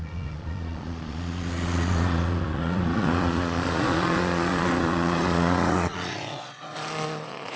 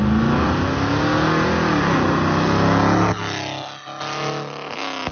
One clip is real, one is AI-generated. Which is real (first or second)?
second